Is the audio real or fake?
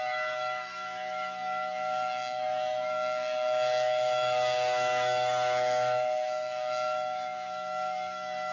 fake